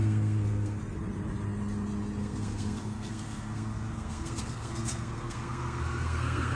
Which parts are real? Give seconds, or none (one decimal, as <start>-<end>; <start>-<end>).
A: 0.8-2.2